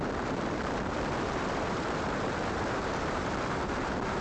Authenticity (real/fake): fake